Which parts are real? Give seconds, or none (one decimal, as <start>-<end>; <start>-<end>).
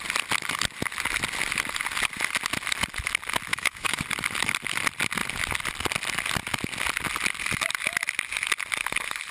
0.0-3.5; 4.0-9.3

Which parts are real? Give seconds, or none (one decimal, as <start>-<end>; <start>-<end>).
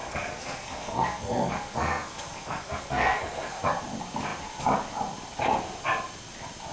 3.6-6.7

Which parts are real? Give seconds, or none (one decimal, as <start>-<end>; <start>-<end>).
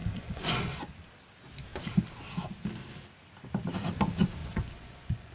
0.8-4.4